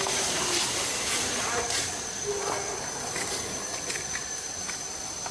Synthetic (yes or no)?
no